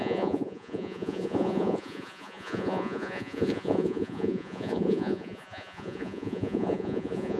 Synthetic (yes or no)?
yes